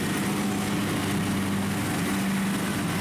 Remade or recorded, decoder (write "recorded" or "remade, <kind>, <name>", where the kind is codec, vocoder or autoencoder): recorded